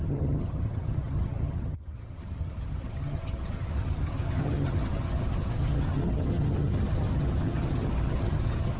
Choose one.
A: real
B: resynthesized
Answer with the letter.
B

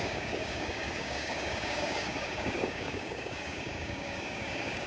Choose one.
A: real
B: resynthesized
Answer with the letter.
B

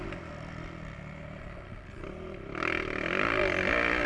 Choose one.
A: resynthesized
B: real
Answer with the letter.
B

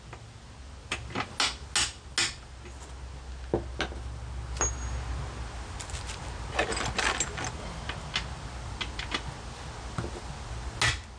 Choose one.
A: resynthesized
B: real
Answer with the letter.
B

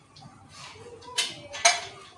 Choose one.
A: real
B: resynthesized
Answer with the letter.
A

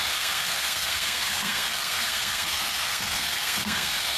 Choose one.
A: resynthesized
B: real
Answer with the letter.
A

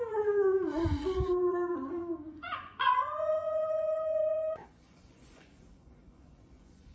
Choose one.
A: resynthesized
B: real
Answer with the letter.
A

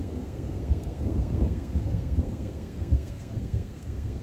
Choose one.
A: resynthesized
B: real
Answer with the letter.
A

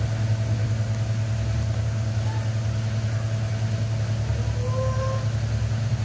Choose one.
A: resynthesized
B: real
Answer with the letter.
B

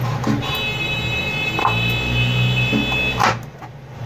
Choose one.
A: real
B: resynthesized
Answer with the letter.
A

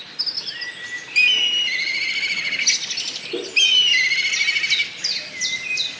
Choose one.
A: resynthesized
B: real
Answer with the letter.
B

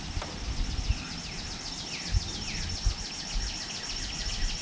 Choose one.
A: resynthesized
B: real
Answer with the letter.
B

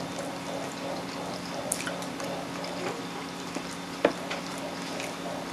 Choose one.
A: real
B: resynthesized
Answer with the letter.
A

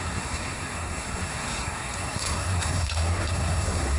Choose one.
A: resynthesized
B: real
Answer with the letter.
A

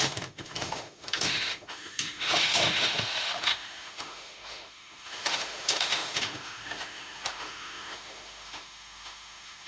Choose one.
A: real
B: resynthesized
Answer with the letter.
B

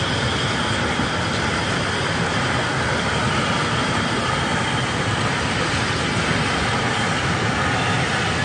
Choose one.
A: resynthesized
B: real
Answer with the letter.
B